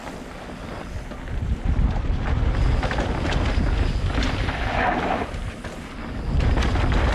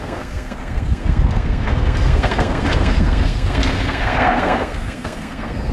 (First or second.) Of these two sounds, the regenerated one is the second